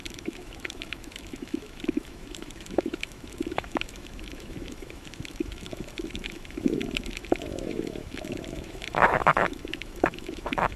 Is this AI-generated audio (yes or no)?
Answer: yes